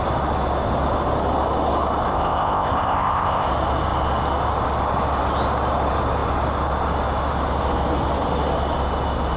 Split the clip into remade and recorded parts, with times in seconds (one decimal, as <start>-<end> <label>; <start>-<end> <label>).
0.0-2.1 recorded; 2.1-3.5 remade; 3.5-9.4 recorded